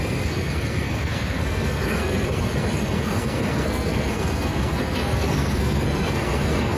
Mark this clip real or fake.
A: fake